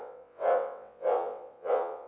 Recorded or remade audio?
remade